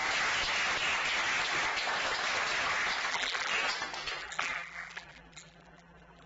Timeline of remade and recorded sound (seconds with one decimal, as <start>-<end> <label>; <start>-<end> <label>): 0.0-3.1 recorded; 3.1-3.5 remade; 3.5-4.2 recorded; 4.2-6.3 remade